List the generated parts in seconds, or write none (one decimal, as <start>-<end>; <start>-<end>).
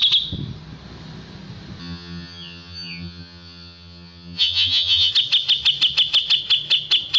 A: 1.8-5.1